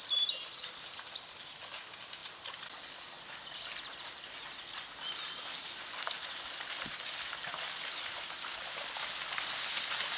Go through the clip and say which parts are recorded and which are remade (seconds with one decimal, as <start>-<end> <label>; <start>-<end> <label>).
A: 0.0-10.2 recorded